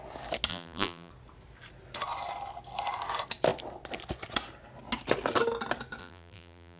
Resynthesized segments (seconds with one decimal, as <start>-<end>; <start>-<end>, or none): 0.5-1.1; 6.0-6.8